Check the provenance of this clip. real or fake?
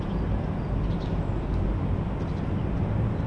real